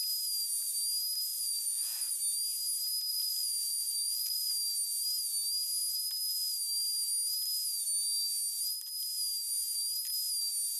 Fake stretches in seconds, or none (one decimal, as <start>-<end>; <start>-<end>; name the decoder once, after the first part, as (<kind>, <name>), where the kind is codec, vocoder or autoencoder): 1.3-2.1 (vocoder, Vocos); 3.1-4.5